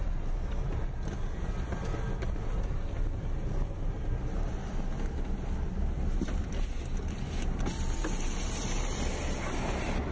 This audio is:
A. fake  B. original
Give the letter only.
B